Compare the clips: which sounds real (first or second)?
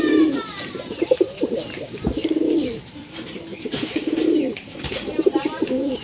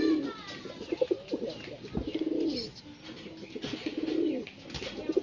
second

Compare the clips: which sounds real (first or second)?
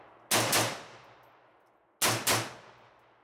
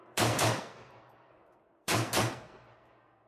first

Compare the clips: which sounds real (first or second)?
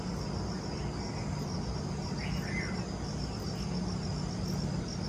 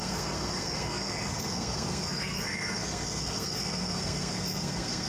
first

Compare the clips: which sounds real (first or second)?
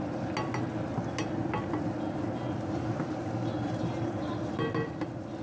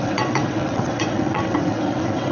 first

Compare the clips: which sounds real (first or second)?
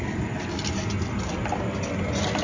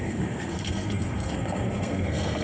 first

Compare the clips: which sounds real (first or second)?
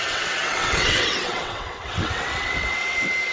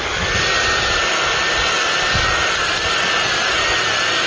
second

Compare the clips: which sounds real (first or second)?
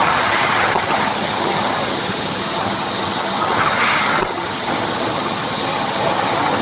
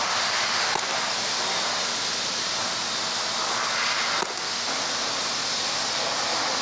second